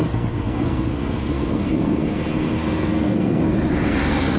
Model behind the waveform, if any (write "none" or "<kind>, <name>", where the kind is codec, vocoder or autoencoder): codec, SNAC